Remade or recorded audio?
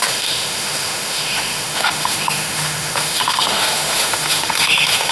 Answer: remade